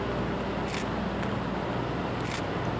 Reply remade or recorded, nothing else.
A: recorded